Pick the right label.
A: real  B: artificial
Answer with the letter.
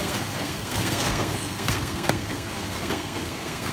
B